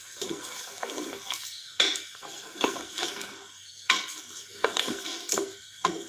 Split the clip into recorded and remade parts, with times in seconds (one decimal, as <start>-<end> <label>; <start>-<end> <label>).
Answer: 0.0-6.1 remade